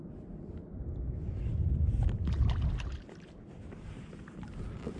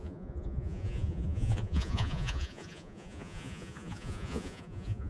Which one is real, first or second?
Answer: first